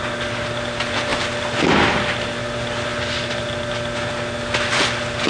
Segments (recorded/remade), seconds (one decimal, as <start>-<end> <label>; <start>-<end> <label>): 0.0-5.3 recorded